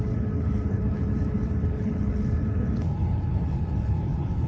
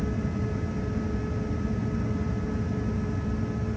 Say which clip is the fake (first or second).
first